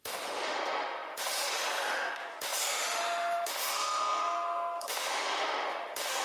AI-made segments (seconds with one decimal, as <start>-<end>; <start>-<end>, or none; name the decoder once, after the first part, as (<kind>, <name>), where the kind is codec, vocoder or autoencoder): 0.0-6.2 (autoencoder, DAC-VAE)